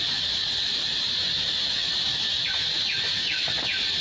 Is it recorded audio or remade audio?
recorded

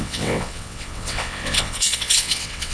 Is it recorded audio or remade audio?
remade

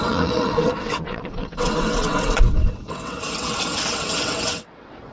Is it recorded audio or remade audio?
remade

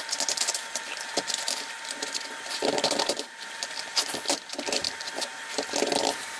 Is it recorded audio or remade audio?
recorded